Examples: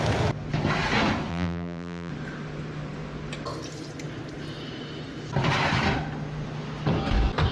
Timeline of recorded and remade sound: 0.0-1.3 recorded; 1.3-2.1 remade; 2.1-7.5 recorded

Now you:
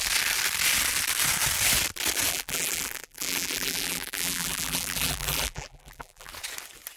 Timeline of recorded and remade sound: 0.0-2.3 recorded; 2.3-6.3 remade; 6.3-7.0 recorded

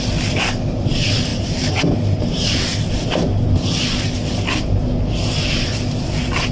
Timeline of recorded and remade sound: 0.0-1.3 recorded; 1.3-2.9 remade; 2.9-6.5 recorded

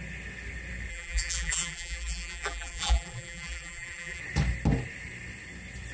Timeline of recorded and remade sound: 0.0-0.9 recorded; 0.9-4.2 remade; 4.2-5.9 recorded

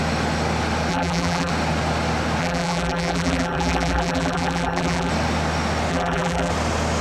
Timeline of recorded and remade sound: 0.0-0.9 recorded; 0.9-1.5 remade; 1.5-2.4 recorded; 2.4-5.1 remade; 5.1-5.9 recorded; 5.9-6.5 remade; 6.5-7.0 recorded